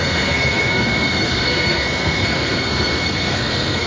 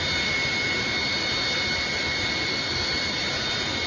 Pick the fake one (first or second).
first